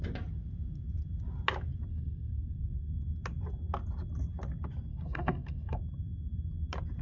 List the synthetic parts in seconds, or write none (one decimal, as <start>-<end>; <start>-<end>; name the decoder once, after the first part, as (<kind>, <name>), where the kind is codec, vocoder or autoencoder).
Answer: 1.9-2.9 (codec, SNAC); 4.9-5.8